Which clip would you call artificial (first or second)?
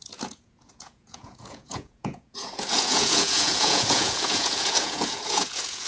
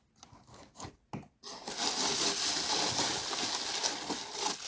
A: first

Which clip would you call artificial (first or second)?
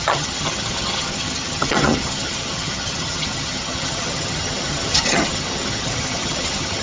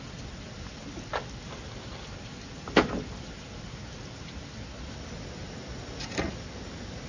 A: first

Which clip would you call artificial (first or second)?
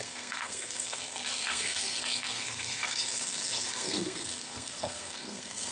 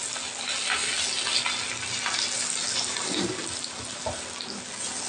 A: first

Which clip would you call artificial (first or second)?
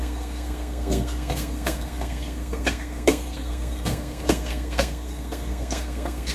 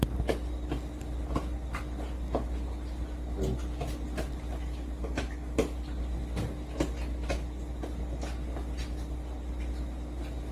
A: first